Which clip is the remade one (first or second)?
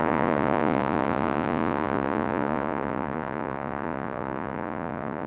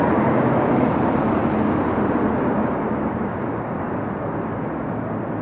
first